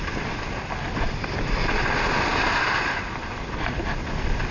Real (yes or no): yes